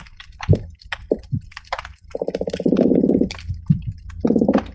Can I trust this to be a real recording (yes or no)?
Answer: yes